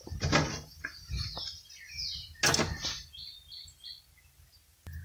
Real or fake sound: real